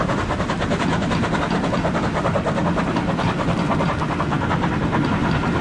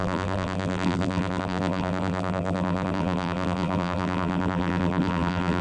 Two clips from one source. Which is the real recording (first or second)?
first